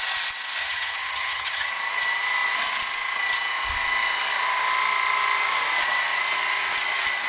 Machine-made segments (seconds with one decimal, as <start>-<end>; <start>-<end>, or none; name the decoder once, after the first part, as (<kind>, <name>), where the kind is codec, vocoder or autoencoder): 0.6-1.7 (vocoder, HiFi-GAN)